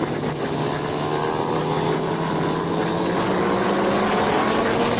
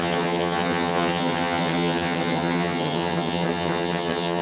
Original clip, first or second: first